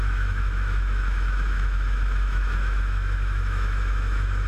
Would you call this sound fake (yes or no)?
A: yes